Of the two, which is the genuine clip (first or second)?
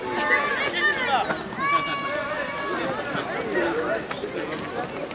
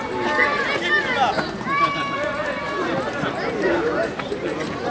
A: first